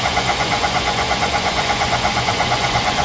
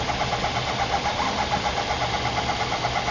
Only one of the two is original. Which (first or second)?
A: second